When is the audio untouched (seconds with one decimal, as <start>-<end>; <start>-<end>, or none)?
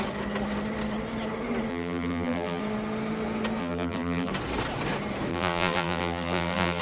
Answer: 0.0-1.7; 2.6-3.6; 4.3-5.3